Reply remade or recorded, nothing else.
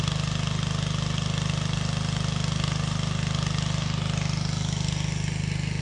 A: recorded